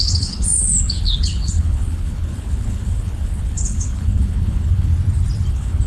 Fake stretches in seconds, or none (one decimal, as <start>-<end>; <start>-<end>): 0.0-4.9; 5.5-5.9